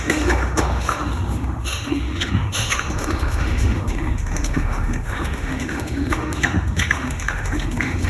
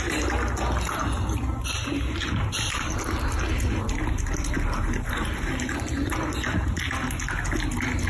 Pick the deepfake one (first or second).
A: first